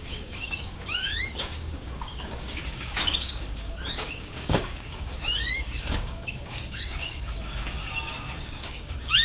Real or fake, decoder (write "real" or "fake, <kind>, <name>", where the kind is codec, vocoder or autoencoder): fake, codec, DAC